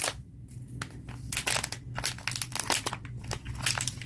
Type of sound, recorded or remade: recorded